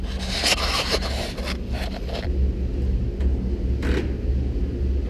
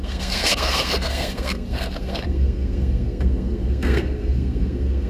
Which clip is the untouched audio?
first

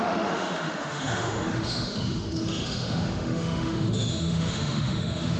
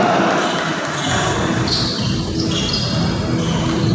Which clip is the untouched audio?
second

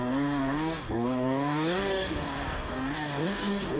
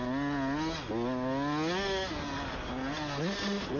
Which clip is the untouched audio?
second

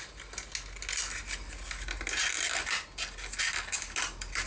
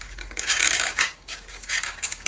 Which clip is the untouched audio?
first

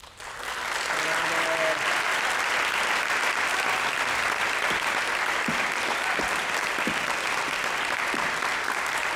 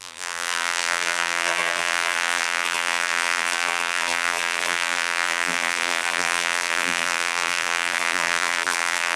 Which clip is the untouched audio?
first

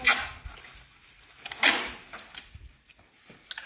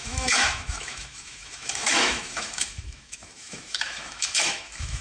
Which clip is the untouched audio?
first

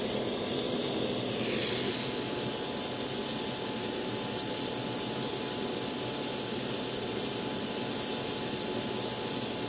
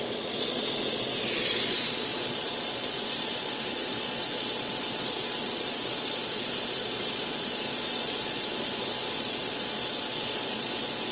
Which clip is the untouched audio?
first